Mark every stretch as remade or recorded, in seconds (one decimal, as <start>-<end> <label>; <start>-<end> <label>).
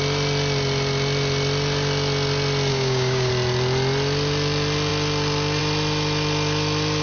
0.0-2.7 recorded; 2.7-3.3 remade; 3.3-7.0 recorded